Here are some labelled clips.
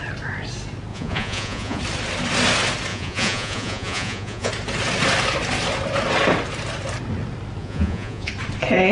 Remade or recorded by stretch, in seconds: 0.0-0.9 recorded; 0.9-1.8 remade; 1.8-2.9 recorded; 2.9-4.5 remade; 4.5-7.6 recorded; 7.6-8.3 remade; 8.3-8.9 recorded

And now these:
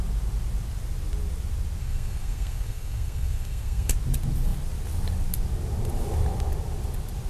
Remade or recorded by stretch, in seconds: 0.0-1.8 recorded; 1.8-3.9 remade; 3.9-7.3 recorded

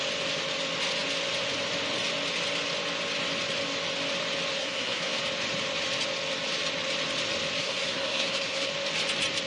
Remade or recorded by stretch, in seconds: 0.0-4.6 recorded; 4.6-5.2 remade; 5.2-7.6 recorded; 7.6-8.7 remade; 8.7-9.5 recorded

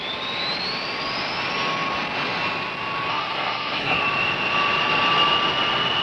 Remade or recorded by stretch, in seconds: 0.0-3.1 recorded; 3.1-4.0 remade; 4.0-6.0 recorded

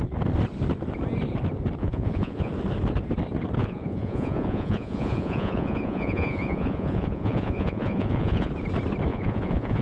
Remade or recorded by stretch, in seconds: 0.0-1.8 recorded; 1.8-2.5 remade; 2.5-3.6 recorded; 3.6-8.5 remade; 8.5-9.1 recorded; 9.1-9.8 remade

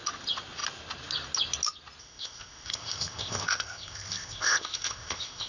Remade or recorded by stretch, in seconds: 0.0-2.0 recorded; 2.0-5.5 remade

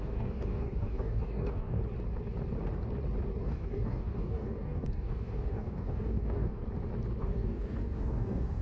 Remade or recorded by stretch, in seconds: 0.0-1.8 remade; 1.8-3.4 recorded; 3.4-6.6 remade; 6.6-7.2 recorded; 7.2-8.6 remade